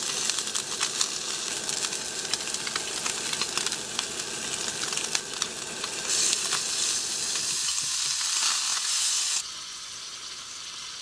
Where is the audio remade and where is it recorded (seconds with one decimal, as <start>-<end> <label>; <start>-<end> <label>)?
0.0-8.7 recorded; 8.7-9.9 remade; 9.9-11.0 recorded